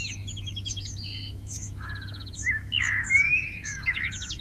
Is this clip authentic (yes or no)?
no